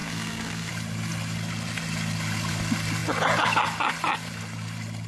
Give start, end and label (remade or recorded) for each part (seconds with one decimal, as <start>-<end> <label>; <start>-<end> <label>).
0.0-0.7 remade; 0.7-5.1 recorded